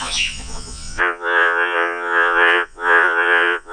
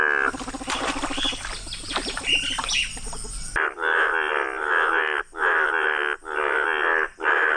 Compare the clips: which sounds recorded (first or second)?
second